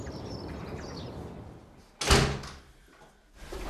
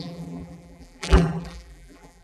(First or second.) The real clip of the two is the first